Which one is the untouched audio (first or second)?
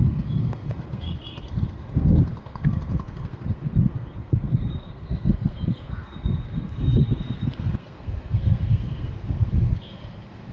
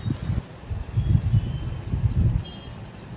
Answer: second